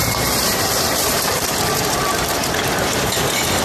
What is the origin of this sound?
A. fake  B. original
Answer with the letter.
A